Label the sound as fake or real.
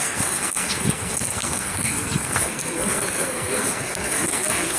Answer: fake